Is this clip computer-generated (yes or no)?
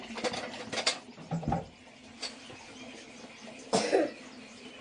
no